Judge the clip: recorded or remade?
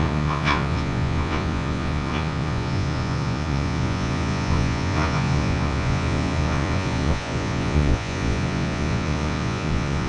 remade